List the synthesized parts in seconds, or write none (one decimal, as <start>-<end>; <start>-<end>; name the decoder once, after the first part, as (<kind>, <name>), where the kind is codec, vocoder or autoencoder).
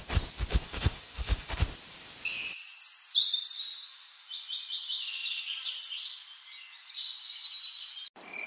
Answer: 0.5-1.6 (codec, SNAC)